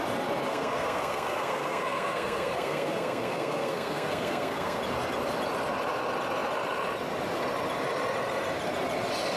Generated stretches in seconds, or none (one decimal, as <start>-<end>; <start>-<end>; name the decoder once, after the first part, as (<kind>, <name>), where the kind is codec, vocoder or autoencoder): 0.5-4.8 (codec, SNAC)